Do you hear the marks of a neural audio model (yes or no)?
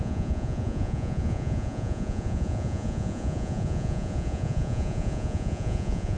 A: yes